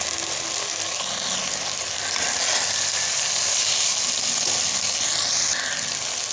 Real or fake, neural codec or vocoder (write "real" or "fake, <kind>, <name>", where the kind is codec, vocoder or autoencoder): real